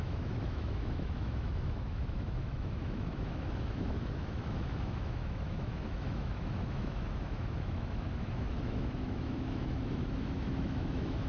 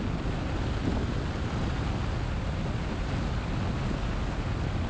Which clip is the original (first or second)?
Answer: second